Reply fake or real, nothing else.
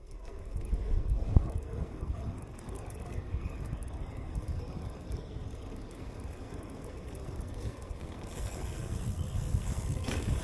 fake